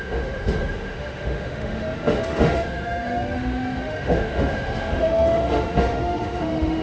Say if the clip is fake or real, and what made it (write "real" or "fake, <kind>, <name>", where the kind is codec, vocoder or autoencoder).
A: fake, autoencoder, DAC-VAE